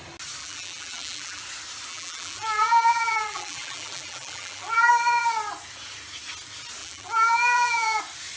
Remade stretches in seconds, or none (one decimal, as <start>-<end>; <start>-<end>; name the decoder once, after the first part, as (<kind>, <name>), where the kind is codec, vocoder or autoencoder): 0.4-1.4 (vocoder, BigVGAN v2); 1.9-4.9; 6.8-8.0